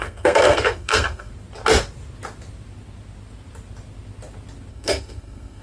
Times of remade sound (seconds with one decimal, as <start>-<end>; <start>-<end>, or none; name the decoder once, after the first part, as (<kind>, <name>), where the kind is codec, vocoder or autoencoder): 0.0-1.3 (codec, SNAC); 4.7-5.6